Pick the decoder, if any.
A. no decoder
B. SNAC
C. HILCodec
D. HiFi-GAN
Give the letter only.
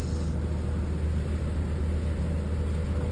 A